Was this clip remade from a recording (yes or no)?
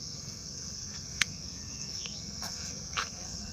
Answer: yes